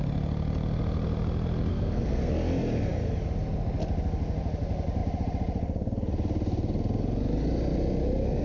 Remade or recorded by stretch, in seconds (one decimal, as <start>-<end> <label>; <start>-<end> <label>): 0.0-1.7 recorded; 1.7-2.3 remade; 2.3-8.4 recorded